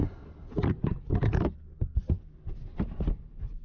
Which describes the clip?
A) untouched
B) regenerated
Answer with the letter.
A